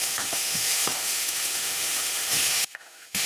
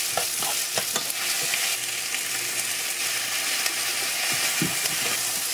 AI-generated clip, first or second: first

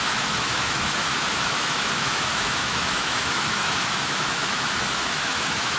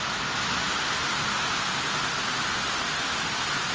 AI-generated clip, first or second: first